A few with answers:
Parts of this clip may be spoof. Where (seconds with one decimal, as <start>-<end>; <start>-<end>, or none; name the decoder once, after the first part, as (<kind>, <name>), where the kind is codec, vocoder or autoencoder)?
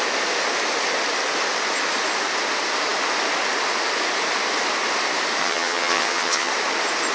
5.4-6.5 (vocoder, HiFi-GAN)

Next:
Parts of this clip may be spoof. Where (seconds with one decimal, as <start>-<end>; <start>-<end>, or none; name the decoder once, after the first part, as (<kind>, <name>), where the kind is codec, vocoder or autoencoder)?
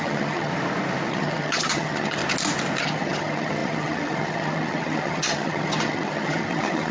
0.0-0.5 (vocoder, HiFi-GAN); 1.1-2.2; 2.8-6.9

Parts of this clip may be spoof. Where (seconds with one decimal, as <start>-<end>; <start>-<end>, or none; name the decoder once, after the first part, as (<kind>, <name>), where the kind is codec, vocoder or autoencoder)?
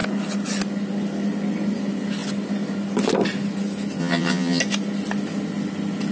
4.0-4.6 (vocoder, HiFi-GAN)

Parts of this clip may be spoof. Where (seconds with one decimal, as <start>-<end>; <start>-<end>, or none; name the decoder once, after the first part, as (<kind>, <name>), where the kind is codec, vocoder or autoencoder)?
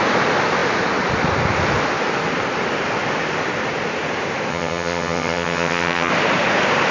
4.5-6.1 (vocoder, HiFi-GAN)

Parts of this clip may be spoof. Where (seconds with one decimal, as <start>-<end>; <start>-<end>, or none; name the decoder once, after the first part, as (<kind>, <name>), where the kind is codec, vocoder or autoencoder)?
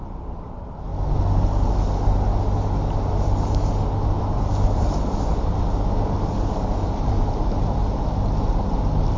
none